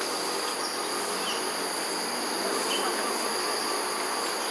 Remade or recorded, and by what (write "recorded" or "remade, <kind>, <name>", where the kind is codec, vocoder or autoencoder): recorded